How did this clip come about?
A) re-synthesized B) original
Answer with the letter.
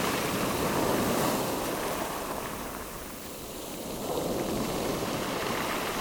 A